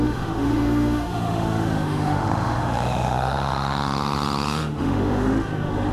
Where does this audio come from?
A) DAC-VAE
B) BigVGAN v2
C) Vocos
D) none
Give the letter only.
A